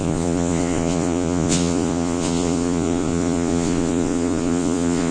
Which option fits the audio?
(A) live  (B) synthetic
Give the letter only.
B